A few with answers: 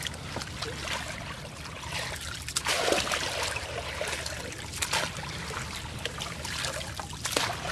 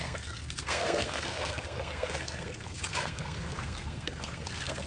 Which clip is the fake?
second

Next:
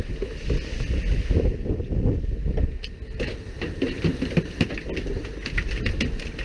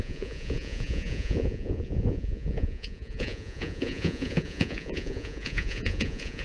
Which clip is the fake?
second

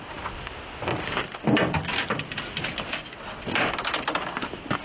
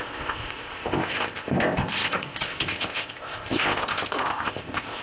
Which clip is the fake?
second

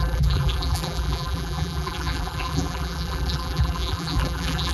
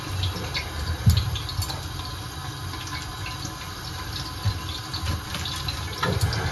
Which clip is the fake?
first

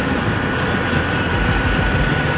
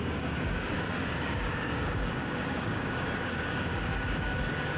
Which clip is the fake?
second